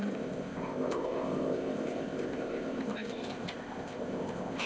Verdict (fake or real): fake